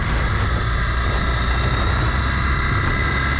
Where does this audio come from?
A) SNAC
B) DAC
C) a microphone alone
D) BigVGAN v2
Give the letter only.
C